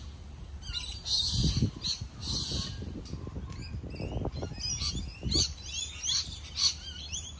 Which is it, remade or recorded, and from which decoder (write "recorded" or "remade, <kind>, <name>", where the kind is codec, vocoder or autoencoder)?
recorded